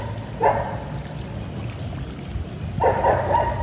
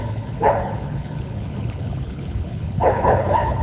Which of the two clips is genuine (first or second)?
first